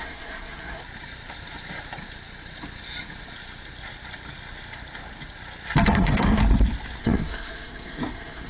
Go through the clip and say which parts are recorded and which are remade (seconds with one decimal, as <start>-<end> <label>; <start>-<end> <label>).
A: 0.0-0.8 remade; 0.8-5.9 recorded; 5.9-6.4 remade; 6.4-7.0 recorded; 7.0-8.5 remade